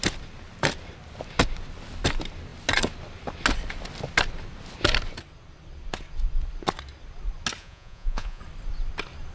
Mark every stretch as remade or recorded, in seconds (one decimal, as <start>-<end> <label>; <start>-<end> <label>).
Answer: 0.0-7.6 recorded; 7.6-8.4 remade; 8.4-9.3 recorded